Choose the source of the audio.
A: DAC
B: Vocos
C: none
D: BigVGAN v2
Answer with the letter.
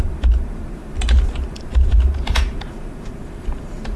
D